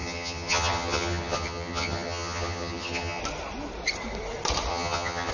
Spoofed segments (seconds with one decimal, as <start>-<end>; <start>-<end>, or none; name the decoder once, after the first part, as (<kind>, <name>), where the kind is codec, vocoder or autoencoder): 0.0-3.2 (vocoder, HiFi-GAN); 4.7-5.3